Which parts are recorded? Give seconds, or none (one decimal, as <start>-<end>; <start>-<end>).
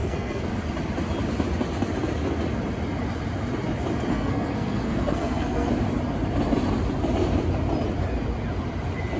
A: 0.5-4.1; 5.7-9.2